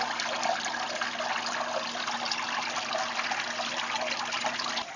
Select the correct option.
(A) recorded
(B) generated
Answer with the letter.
A